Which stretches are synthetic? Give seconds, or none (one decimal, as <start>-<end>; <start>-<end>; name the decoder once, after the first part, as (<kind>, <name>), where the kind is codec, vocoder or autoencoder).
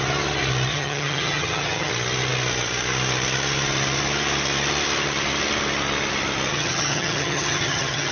0.7-1.9 (vocoder, HiFi-GAN); 6.5-8.1